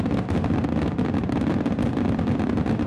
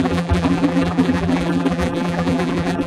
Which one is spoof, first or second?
second